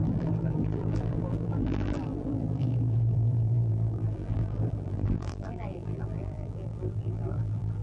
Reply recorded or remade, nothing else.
remade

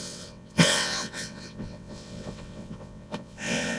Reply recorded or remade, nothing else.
remade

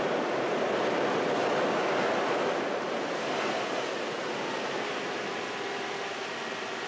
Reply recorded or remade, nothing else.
recorded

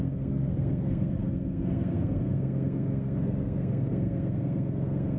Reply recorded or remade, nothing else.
remade